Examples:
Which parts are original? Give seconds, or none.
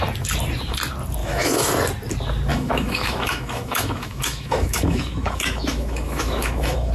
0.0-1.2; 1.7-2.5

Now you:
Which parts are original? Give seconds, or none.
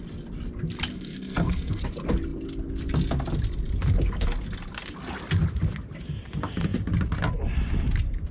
0.0-0.9; 1.8-8.3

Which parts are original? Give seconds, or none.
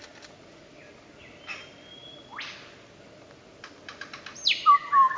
0.0-5.2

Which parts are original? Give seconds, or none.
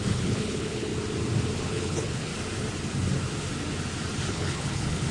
0.9-1.6; 2.3-4.3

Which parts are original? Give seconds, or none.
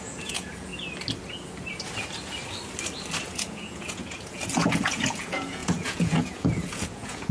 0.7-3.2